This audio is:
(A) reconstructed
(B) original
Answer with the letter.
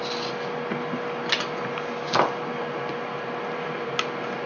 B